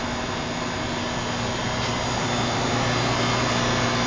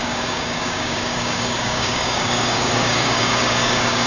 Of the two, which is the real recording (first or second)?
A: first